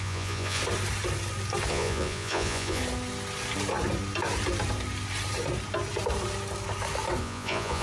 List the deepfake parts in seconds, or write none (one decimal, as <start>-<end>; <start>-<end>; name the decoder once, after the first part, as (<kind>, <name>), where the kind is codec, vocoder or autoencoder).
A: 0.0-0.6 (vocoder, Vocos); 1.7-2.8; 7.2-7.8